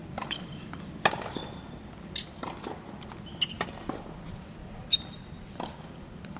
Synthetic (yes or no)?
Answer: no